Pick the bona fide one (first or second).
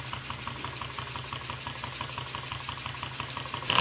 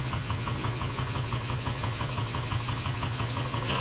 first